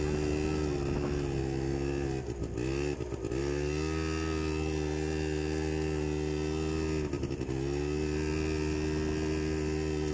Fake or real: real